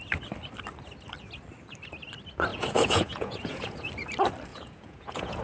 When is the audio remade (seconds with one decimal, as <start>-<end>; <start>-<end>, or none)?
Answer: 2.5-3.9; 4.5-5.4